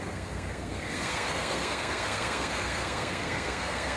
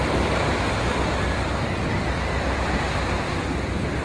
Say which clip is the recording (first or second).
second